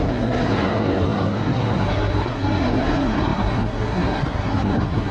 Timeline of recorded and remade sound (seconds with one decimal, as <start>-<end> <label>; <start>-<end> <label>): 0.0-5.1 remade